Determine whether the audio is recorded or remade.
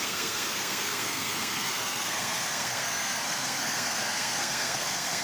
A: remade